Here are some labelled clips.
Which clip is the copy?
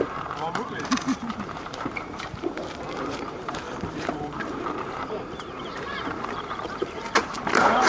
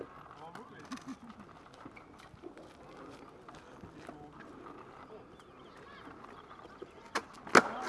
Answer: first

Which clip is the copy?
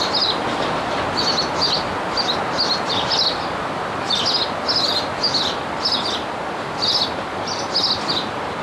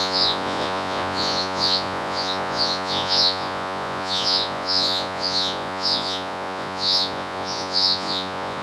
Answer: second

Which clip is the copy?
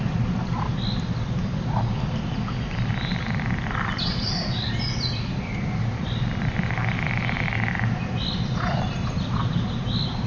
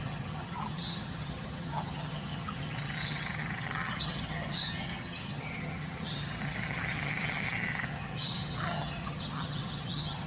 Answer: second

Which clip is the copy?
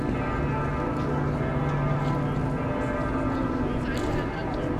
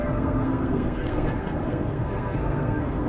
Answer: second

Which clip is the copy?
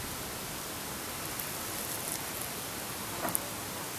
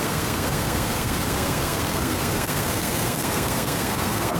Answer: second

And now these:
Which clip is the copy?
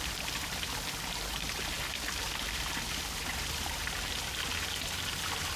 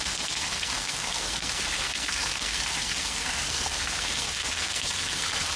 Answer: second